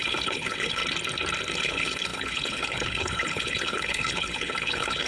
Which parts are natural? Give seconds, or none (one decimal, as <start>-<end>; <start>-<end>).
0.8-1.6